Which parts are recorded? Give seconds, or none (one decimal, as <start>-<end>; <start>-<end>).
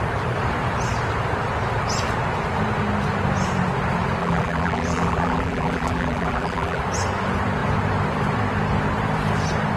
0.0-4.2; 6.8-9.8